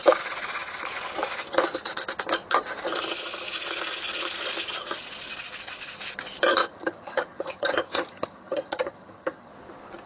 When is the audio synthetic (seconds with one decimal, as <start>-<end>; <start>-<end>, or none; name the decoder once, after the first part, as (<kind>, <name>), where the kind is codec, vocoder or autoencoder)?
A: 6.6-9.5 (vocoder, HiFi-GAN)